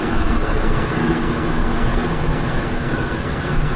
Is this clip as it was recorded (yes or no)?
no